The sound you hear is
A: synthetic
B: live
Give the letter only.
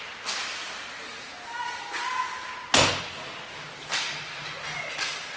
B